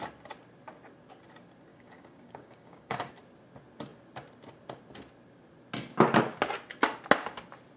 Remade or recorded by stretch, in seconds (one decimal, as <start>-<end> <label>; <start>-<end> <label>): 0.0-1.7 recorded; 1.7-3.1 remade; 3.1-7.8 recorded